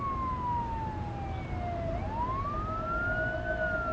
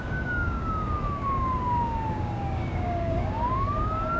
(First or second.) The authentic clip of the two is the first